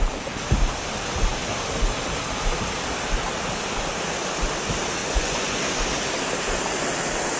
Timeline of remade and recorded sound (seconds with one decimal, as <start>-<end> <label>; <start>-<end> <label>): 0.0-5.0 recorded; 5.0-5.6 remade; 5.6-7.4 recorded